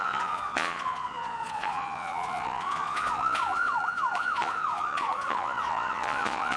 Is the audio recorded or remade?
remade